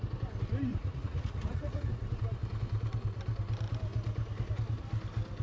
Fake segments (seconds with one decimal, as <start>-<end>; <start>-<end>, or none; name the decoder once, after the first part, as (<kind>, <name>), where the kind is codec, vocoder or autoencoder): 0.7-1.9 (vocoder, Vocos)